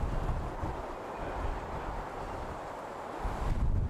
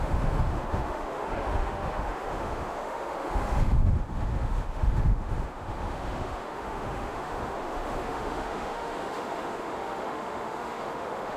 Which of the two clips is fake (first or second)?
second